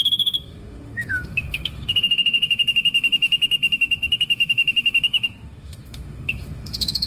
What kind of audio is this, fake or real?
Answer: fake